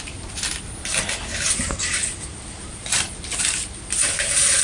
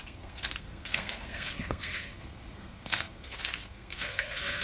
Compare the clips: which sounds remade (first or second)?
second